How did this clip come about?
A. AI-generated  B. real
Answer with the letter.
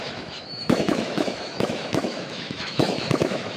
A